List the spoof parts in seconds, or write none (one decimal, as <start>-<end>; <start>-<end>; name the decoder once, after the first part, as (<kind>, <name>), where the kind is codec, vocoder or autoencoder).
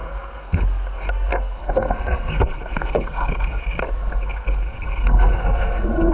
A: 0.0-0.6 (codec, SNAC); 1.3-3.6; 4.0-6.1